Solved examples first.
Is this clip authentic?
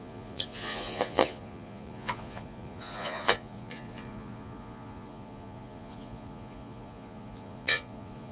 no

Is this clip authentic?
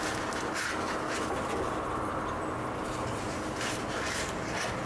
yes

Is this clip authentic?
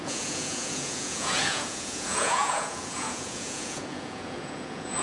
no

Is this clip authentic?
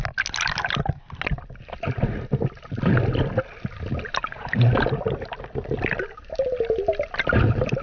yes